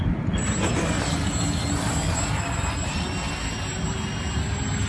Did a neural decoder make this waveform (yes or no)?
no